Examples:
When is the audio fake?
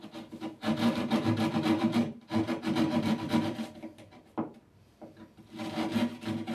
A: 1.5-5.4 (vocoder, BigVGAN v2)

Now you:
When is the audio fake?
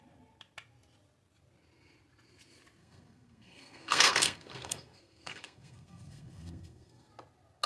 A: 2.8-7.1 (codec, SNAC)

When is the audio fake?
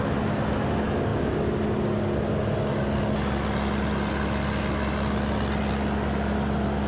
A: none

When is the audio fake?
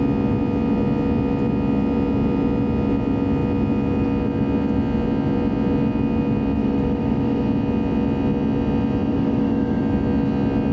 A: 6.6-7.4 (autoencoder, DAC-VAE); 9.1-9.8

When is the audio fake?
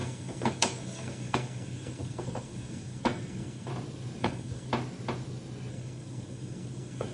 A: 0.0-3.7 (codec, SNAC); 4.2-4.7; 5.7-7.1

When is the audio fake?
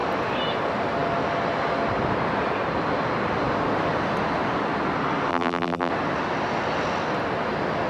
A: 5.3-5.9 (vocoder, BigVGAN v2)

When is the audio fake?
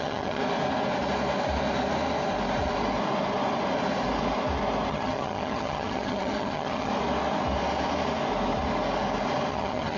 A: 0.0-0.4 (vocoder, HiFi-GAN); 4.9-6.9; 9.5-10.0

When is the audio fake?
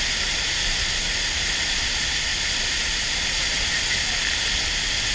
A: none